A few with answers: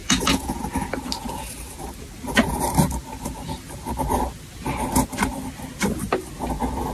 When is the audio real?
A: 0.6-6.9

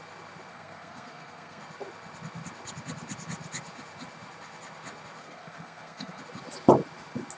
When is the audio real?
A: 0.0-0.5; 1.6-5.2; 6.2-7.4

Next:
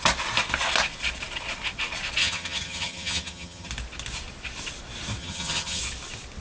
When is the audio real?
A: 0.0-2.2; 3.7-5.2; 5.8-6.4

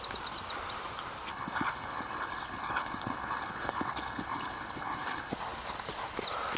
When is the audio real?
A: 0.0-1.3; 5.3-6.6

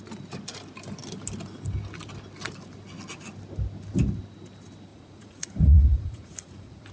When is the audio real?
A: 0.0-4.9